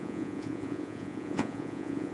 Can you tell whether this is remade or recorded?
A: remade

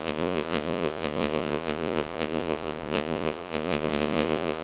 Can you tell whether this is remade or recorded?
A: remade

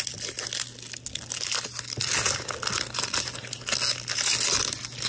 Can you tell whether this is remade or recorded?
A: recorded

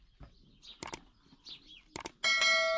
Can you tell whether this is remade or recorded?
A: recorded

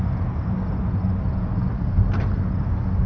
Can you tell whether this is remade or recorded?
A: recorded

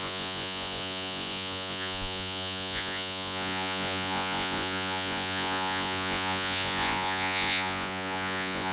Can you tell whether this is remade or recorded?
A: remade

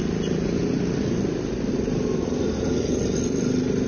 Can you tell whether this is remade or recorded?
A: recorded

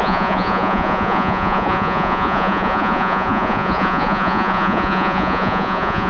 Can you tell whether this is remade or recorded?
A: remade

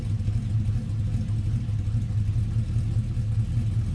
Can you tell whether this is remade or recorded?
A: recorded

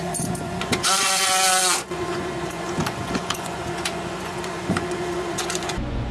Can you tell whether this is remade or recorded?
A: remade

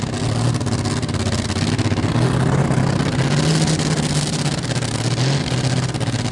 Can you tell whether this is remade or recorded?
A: recorded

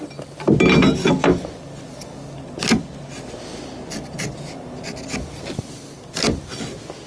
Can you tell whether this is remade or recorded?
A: recorded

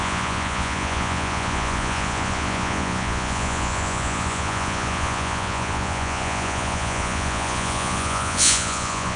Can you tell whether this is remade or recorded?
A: remade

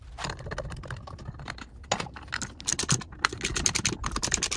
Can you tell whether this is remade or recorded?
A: recorded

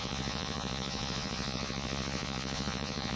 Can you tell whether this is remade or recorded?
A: remade